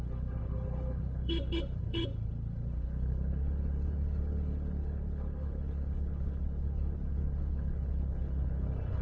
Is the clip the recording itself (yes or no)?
no